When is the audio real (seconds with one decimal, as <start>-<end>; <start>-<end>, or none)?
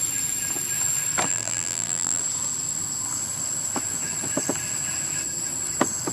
0.0-1.3; 2.2-6.1